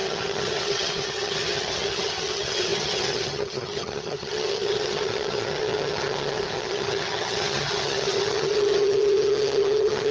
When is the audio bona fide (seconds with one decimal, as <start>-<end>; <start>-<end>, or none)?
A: none